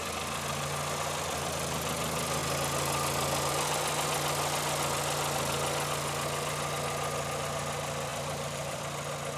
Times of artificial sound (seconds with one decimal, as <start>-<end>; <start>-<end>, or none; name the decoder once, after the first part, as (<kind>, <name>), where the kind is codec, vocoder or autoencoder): 8.1-8.8 (vocoder, BigVGAN v2)